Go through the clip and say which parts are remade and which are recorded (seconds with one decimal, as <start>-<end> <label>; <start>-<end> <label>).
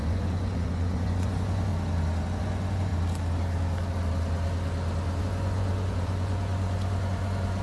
0.0-1.7 remade; 1.7-2.3 recorded; 2.3-2.9 remade; 2.9-5.2 recorded; 5.2-7.6 remade